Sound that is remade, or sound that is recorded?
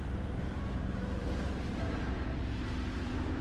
remade